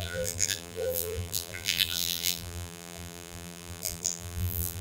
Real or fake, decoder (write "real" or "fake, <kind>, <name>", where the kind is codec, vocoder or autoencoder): fake, vocoder, BigVGAN v2